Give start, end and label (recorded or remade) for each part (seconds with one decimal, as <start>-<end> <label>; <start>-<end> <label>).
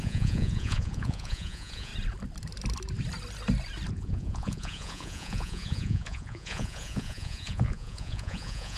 0.0-1.9 remade; 1.9-3.9 recorded; 3.9-8.8 remade